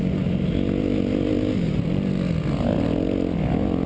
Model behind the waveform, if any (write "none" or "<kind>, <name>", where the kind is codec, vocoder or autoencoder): none